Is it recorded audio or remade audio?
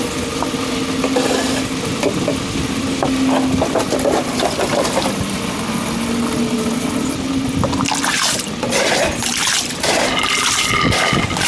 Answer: recorded